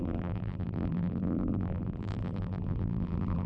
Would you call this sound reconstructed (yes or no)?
yes